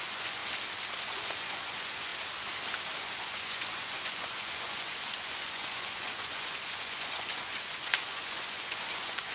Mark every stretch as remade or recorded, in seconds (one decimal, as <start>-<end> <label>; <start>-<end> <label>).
0.0-0.4 remade; 0.4-1.0 recorded; 1.0-2.1 remade; 2.1-3.0 recorded; 3.0-9.3 remade